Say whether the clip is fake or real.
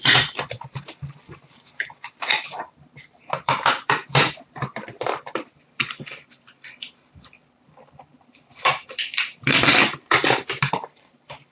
fake